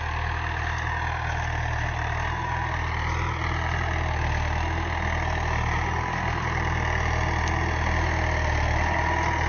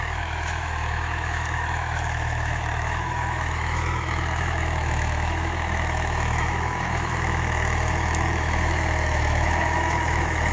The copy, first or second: second